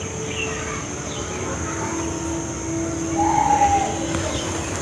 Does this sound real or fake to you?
real